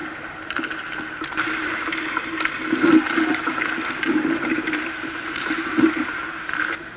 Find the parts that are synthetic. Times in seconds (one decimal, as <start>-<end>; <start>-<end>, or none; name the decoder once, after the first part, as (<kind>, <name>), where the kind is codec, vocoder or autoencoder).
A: 4.1-7.0 (vocoder, BigVGAN v2)